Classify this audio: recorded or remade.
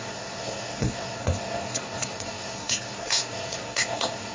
remade